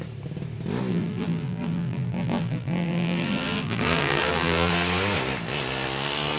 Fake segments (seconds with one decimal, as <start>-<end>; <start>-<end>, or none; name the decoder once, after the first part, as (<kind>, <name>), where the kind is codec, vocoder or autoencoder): 0.9-4.7 (vocoder, BigVGAN v2)